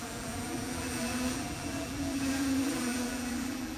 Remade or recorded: remade